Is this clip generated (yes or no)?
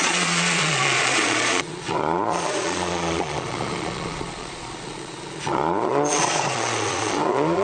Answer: yes